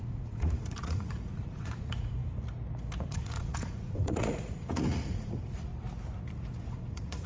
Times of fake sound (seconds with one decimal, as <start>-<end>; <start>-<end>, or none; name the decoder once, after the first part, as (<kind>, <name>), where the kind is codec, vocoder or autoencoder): 0.0-2.2 (vocoder, Vocos); 3.0-5.7; 6.7-7.3

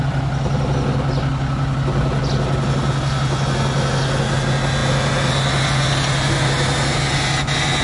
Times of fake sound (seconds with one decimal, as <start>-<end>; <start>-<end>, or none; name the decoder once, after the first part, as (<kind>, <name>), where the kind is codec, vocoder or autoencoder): none

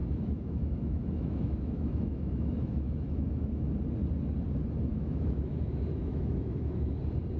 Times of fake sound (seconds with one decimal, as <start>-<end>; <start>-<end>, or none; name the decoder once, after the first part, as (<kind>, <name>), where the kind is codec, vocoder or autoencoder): 0.0-3.7 (autoencoder, DAC-VAE); 4.9-7.0

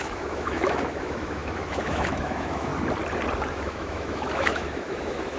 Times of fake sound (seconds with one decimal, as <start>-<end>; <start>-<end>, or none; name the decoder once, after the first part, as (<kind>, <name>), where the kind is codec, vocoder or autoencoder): 0.0-2.7 (autoencoder, DAC-VAE); 3.5-5.4

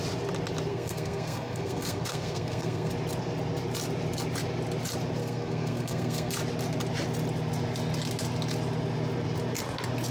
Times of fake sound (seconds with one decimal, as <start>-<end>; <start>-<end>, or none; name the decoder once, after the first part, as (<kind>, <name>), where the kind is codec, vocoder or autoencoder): 0.7-2.9 (codec, SNAC); 5.2-6.3